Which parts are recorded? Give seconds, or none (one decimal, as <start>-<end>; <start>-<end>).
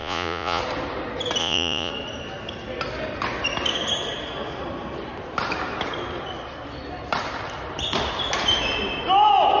0.6-1.4; 1.9-9.6